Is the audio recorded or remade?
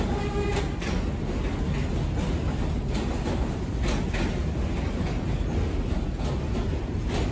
recorded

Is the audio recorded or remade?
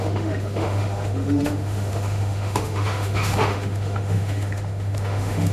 remade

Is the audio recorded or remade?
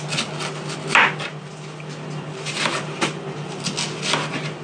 recorded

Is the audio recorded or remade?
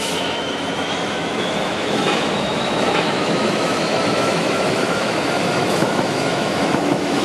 remade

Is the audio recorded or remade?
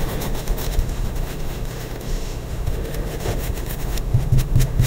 remade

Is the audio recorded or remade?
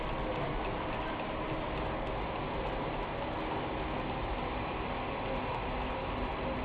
recorded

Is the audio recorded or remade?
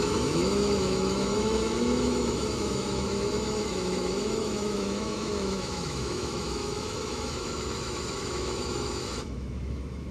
remade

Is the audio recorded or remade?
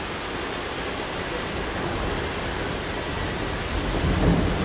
recorded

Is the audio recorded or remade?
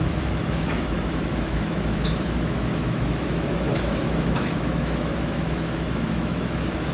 remade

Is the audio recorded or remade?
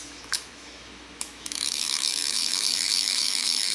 remade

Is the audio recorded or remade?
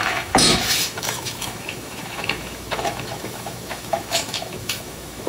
remade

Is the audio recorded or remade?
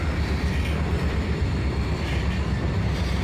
recorded